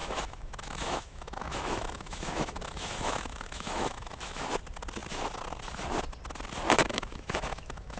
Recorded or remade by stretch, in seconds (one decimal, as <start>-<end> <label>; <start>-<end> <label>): 0.0-4.5 remade; 4.5-6.8 recorded; 6.8-8.0 remade